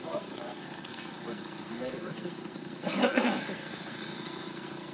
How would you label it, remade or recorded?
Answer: remade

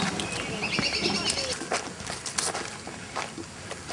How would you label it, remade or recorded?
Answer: recorded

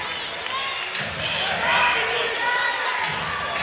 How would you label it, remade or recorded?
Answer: recorded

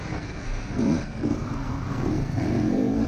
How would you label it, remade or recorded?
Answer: remade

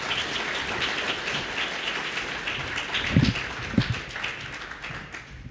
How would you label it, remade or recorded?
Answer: recorded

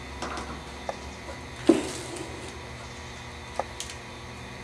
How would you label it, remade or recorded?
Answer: recorded